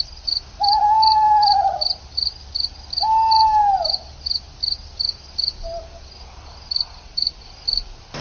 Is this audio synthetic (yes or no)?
no